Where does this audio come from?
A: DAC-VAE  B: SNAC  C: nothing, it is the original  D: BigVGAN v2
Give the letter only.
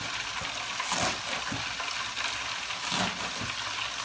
C